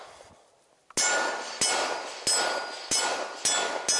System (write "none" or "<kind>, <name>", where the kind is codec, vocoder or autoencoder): none